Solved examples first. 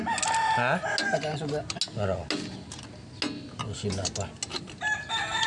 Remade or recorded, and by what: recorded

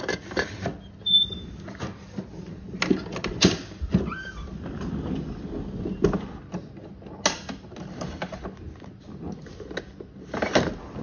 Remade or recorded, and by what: recorded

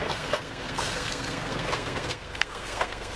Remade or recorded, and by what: remade, codec, SNAC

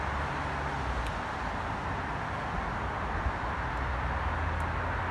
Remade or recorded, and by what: recorded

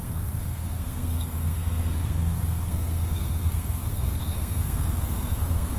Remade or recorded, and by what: remade, codec, SNAC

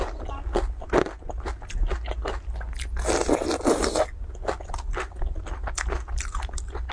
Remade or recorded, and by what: recorded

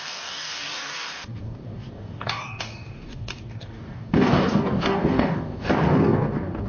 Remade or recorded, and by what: remade, codec, DAC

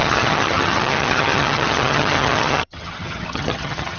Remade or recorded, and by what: remade, vocoder, HiFi-GAN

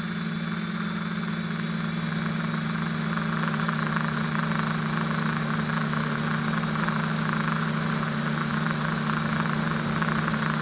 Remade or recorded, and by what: recorded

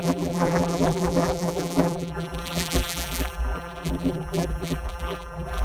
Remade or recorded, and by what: remade, vocoder, BigVGAN v2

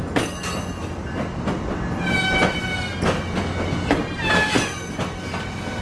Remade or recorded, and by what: recorded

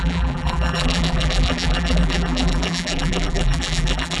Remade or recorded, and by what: remade, vocoder, BigVGAN v2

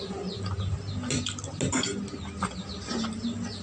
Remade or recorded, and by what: recorded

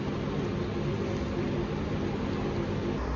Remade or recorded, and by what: recorded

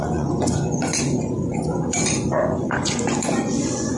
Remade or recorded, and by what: remade, vocoder, Vocos